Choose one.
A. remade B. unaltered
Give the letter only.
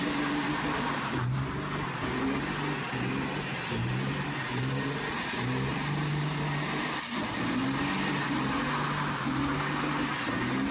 B